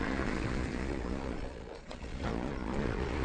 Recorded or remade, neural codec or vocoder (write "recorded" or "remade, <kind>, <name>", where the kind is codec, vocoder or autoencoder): remade, vocoder, Vocos